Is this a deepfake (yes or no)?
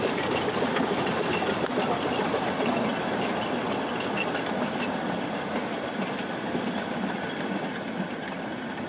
no